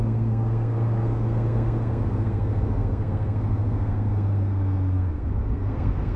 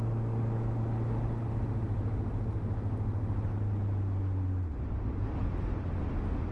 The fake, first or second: first